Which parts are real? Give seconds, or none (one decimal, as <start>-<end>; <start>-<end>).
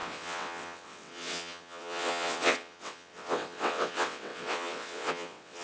none